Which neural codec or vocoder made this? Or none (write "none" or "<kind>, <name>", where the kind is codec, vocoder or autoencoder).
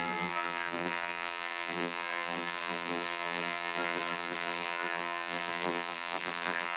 vocoder, BigVGAN v2